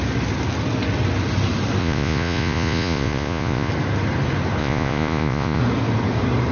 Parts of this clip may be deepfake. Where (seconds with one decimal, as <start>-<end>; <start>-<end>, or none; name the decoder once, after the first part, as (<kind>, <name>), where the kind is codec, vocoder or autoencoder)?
1.8-3.7 (vocoder, Vocos); 4.6-5.6